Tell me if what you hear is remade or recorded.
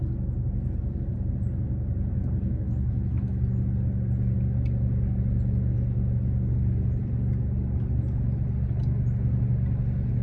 recorded